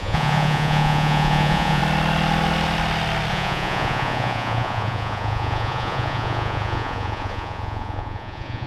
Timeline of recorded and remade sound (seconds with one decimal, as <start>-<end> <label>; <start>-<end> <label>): 0.0-1.8 remade; 1.8-3.3 recorded; 3.3-8.7 remade